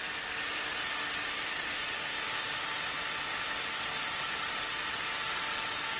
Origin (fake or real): real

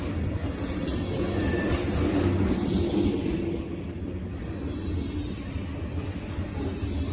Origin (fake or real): real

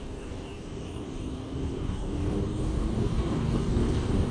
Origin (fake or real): fake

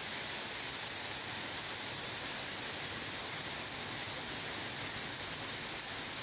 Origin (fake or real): real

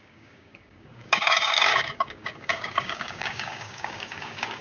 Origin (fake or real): fake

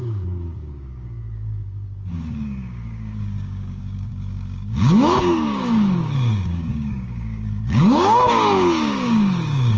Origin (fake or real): fake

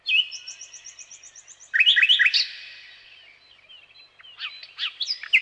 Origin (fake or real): real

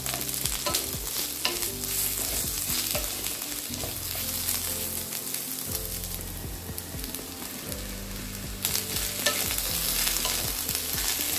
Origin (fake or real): real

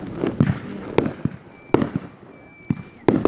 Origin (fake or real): real